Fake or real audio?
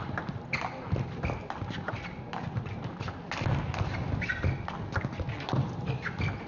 real